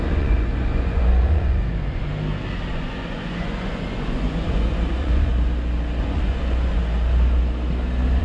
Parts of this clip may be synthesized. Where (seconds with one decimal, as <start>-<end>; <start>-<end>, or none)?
0.0-2.1; 2.7-5.3; 6.0-6.8